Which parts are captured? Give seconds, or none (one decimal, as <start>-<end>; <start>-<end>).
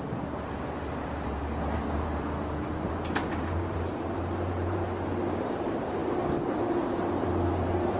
6.0-6.6